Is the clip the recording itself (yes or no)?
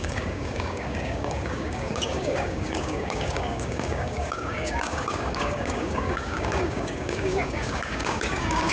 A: no